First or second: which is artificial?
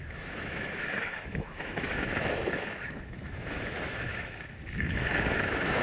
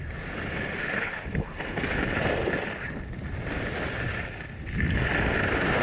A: first